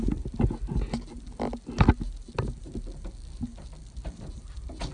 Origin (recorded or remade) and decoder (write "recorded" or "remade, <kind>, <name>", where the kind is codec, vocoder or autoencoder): recorded